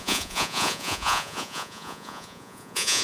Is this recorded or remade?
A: remade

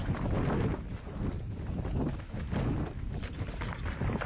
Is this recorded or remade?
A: recorded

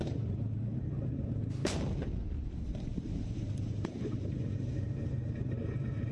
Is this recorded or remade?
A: remade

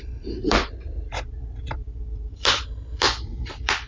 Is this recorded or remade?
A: remade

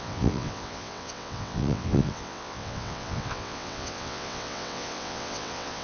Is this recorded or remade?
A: remade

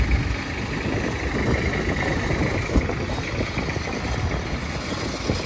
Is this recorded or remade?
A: recorded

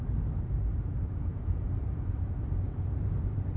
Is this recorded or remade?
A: remade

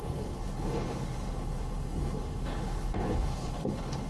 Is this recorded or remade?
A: remade